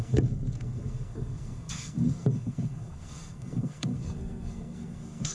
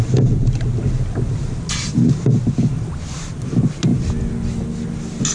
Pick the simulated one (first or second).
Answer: first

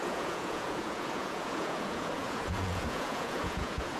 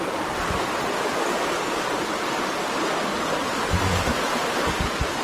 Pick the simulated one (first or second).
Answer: first